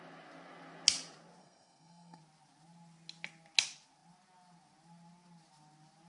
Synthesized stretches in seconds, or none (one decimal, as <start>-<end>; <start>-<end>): 1.4-2.2